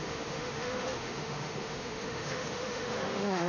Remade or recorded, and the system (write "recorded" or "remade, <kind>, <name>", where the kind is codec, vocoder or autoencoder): remade, autoencoder, DAC-VAE